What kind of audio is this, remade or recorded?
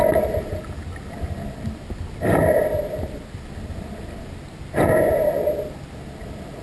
recorded